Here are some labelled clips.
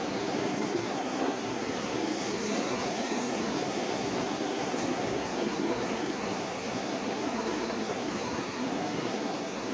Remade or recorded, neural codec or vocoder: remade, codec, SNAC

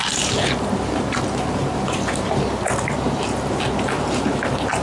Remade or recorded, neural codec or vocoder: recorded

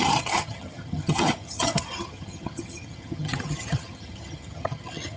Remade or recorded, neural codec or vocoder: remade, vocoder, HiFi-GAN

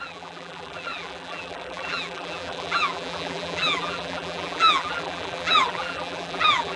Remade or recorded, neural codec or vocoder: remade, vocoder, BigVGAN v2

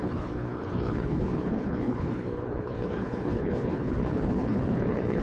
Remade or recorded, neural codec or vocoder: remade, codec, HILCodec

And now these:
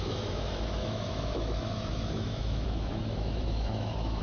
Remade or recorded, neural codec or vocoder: remade, autoencoder, DAC-VAE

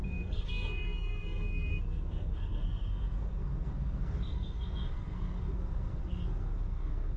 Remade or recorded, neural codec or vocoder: remade, codec, SNAC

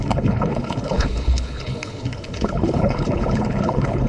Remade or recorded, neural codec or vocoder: remade, codec, HILCodec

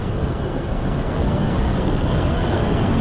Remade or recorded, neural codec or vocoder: remade, codec, SNAC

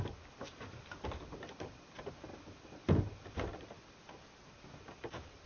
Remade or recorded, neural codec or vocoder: remade, vocoder, BigVGAN v2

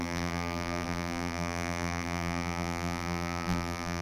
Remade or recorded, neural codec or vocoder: remade, vocoder, BigVGAN v2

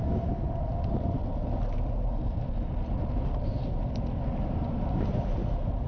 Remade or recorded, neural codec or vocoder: recorded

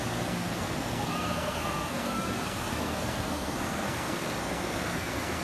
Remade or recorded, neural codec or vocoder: remade, codec, SNAC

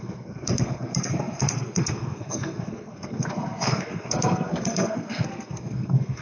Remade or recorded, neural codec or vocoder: remade, codec, SNAC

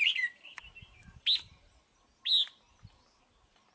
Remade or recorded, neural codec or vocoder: recorded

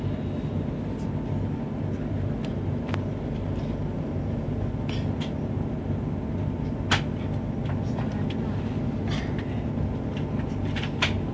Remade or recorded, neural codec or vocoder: recorded